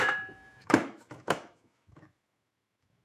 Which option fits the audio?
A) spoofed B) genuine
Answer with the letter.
A